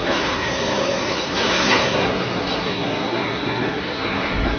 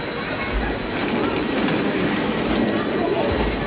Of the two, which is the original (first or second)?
second